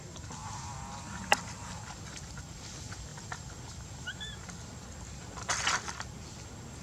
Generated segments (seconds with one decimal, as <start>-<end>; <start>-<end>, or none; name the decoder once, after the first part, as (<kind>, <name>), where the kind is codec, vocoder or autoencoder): none